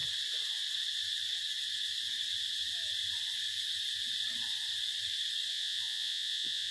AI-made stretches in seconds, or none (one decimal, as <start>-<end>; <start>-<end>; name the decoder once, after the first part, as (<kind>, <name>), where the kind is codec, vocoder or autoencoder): 5.5-6.7 (vocoder, Vocos)